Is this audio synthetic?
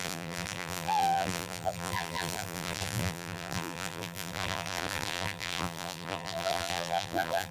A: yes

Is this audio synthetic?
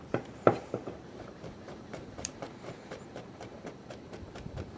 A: yes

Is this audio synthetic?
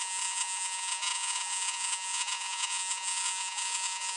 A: yes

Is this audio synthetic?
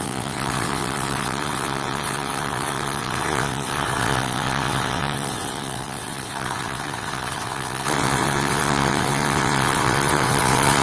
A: yes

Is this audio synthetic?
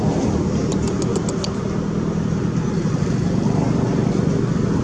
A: no